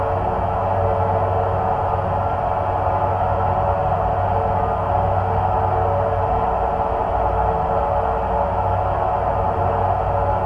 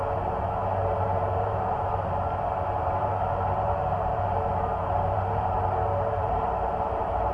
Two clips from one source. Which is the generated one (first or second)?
second